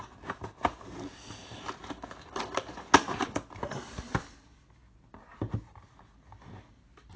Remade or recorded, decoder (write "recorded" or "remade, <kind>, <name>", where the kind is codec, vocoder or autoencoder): recorded